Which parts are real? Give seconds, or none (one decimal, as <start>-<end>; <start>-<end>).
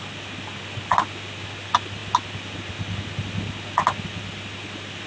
0.0-5.1